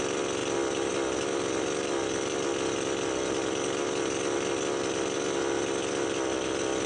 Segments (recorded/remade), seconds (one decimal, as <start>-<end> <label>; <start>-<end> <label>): 0.0-6.9 recorded